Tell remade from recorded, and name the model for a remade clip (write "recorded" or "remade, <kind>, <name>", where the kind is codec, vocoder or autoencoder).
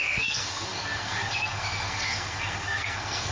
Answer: remade, codec, SNAC